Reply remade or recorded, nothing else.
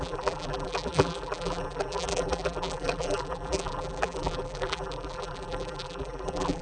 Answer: remade